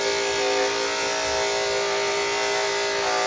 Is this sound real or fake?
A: real